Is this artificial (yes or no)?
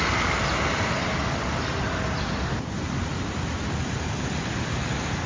no